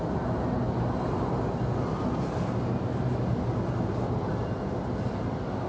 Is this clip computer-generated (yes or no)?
no